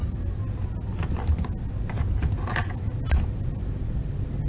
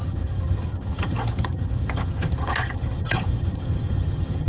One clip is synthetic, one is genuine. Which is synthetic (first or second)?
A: second